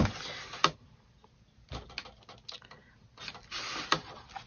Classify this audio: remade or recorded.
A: recorded